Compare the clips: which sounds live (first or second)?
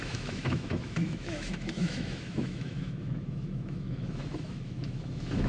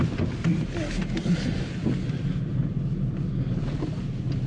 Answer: second